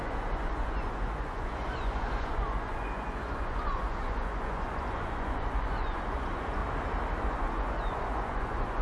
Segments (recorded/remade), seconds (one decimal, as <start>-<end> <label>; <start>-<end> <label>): 0.0-6.6 remade; 6.6-7.2 recorded; 7.2-8.8 remade